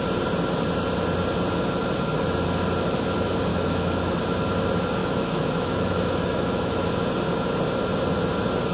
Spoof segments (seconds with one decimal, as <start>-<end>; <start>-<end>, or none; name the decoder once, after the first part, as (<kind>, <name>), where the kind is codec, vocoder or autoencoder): 3.5-4.2 (autoencoder, DAC-VAE); 5.0-6.9

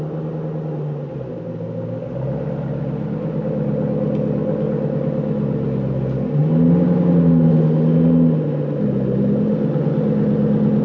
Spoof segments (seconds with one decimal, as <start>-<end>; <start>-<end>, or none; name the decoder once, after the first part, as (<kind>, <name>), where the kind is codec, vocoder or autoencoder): none